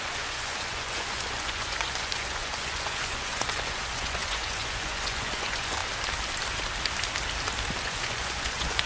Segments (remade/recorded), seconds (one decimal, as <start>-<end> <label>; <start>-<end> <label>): 0.0-5.8 remade; 5.8-7.8 recorded; 7.8-8.9 remade